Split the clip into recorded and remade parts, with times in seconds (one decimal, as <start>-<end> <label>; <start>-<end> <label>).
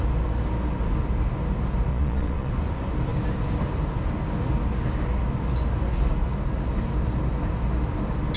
0.0-1.9 recorded; 1.9-2.5 remade; 2.5-8.4 recorded